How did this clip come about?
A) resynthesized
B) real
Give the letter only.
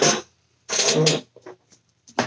B